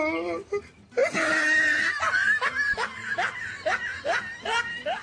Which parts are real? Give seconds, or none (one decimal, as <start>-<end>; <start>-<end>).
0.0-5.0